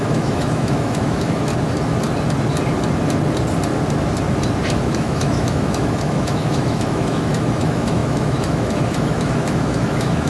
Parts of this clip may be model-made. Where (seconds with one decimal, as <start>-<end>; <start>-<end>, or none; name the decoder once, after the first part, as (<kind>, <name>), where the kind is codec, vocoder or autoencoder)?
0.0-1.5 (autoencoder, DAC-VAE); 4.8-10.3